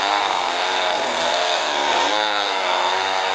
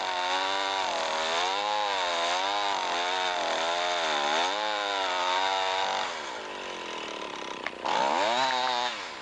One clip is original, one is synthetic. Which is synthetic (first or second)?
first